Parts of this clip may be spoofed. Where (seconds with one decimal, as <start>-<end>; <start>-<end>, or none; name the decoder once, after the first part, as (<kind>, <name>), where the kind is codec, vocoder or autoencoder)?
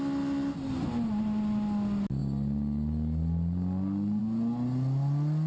none